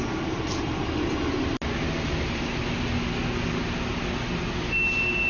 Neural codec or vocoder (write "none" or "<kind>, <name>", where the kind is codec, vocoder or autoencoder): none